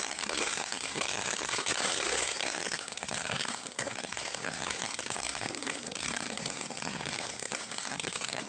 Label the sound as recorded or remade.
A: remade